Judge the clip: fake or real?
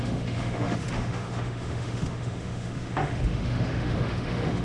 fake